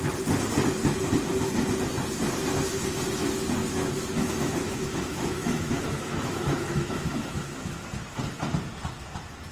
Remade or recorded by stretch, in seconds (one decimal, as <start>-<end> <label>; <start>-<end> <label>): 0.0-3.6 recorded; 3.6-7.8 remade; 7.8-9.5 recorded